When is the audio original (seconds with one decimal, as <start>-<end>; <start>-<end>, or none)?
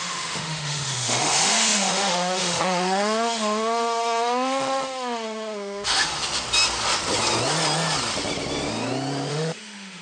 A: 6.1-9.3